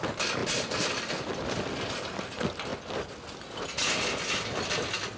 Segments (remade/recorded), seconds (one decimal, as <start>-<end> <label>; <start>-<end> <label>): 0.0-5.2 recorded